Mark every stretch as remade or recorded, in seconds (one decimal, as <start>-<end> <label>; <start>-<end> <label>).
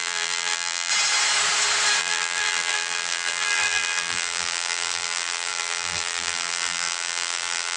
0.0-0.9 remade; 0.9-2.0 recorded; 2.0-7.8 remade